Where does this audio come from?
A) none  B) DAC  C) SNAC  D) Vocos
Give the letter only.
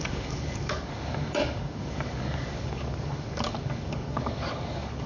B